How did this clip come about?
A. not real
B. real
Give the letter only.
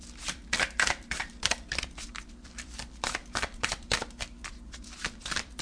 A